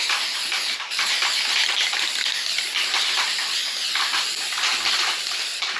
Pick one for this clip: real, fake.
fake